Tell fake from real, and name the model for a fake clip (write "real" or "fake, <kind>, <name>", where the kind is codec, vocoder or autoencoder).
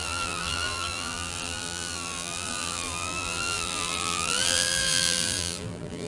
fake, vocoder, BigVGAN v2